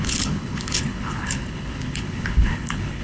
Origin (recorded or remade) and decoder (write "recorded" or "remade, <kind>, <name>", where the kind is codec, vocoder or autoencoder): remade, codec, HILCodec